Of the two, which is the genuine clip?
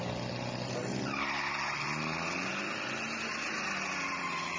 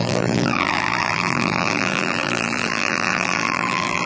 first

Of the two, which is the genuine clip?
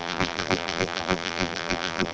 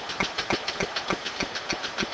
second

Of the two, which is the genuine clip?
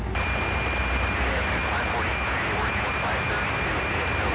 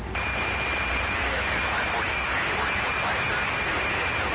first